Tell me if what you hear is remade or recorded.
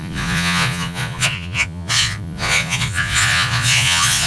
remade